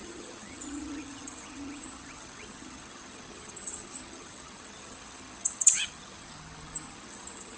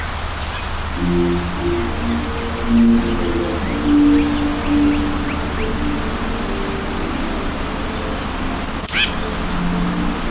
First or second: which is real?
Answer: second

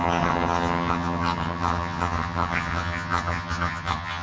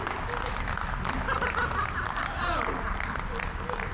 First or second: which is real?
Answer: second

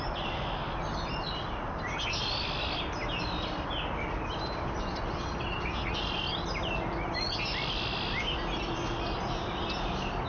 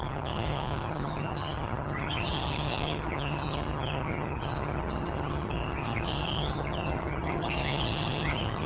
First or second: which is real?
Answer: first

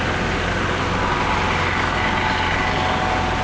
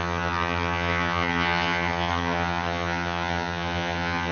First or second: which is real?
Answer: first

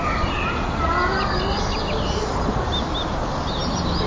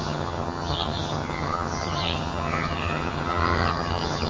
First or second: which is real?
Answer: first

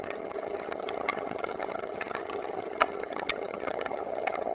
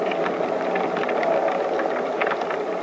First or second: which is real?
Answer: second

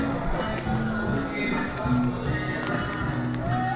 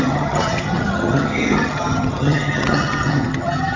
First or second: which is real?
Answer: first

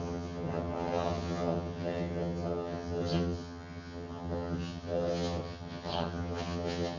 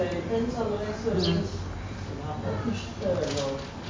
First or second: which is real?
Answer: second